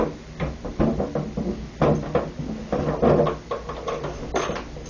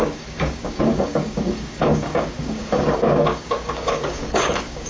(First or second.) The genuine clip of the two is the first